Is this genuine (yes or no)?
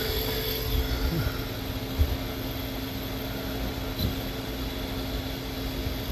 yes